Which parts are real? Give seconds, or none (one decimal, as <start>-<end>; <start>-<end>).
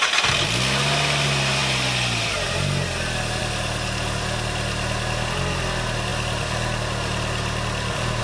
0.0-8.2